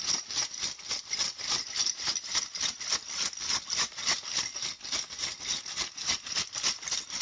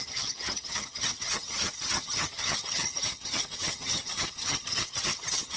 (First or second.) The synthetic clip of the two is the second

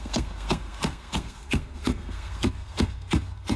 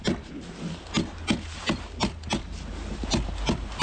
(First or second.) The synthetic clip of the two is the first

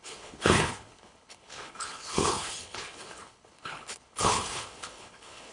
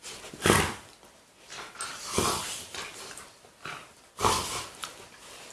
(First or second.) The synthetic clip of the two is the first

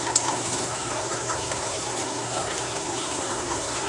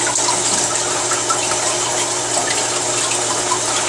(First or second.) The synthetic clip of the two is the first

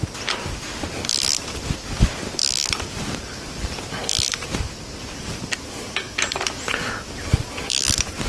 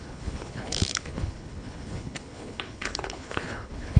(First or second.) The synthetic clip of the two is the second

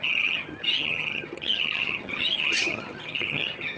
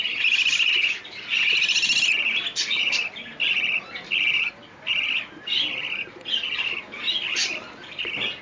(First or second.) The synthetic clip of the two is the first